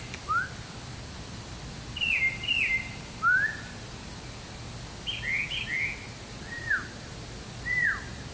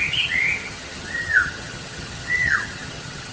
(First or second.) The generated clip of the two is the second